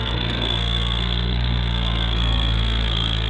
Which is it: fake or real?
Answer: fake